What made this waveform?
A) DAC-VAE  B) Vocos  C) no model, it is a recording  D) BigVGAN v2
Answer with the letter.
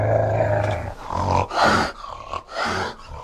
C